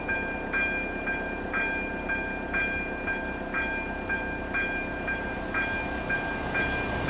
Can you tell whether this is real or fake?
real